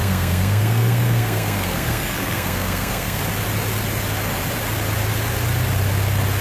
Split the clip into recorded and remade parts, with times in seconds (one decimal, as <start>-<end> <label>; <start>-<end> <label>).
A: 0.0-3.2 remade; 3.2-6.4 recorded